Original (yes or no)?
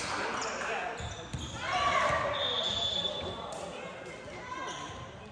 no